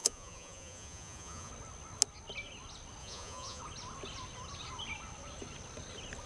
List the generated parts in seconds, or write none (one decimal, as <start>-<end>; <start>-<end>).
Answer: 0.0-1.5; 3.0-3.6

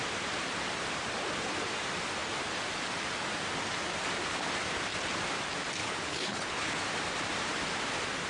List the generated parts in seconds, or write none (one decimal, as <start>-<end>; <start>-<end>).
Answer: 5.8-6.8

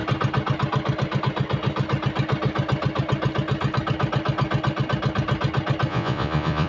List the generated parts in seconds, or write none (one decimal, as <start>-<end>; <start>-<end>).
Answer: 5.9-6.7

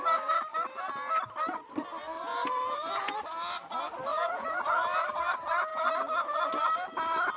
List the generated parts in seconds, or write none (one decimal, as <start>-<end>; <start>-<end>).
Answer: 2.3-3.2; 4.1-4.6

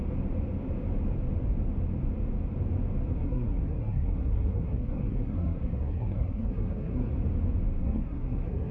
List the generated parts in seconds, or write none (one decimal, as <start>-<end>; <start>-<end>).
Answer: 3.1-7.1; 7.8-8.7